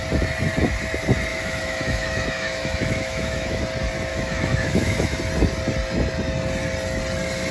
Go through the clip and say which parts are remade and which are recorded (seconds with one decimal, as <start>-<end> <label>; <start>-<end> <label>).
0.0-1.3 recorded; 1.3-3.6 remade; 3.6-4.1 recorded; 4.1-5.2 remade; 5.2-7.5 recorded